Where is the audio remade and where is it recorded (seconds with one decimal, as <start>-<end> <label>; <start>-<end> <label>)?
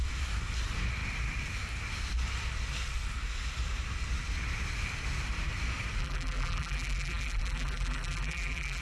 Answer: 0.0-6.0 recorded; 6.0-8.8 remade